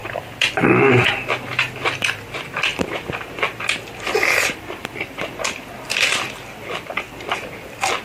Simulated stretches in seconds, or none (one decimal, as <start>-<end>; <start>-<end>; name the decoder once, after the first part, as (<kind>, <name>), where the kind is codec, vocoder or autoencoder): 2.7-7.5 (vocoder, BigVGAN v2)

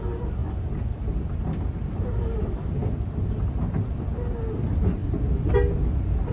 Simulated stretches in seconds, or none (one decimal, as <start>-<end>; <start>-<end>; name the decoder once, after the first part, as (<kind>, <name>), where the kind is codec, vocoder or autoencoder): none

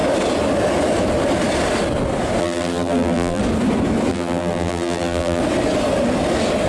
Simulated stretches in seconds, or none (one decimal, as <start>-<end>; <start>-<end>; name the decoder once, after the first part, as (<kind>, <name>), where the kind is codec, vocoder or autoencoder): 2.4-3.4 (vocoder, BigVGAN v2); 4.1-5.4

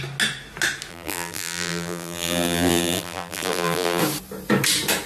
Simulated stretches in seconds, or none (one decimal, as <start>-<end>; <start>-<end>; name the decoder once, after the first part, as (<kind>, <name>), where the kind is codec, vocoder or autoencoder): 0.9-4.0 (vocoder, BigVGAN v2)